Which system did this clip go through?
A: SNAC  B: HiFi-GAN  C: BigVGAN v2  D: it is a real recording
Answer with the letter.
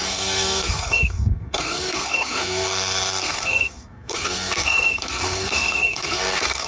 A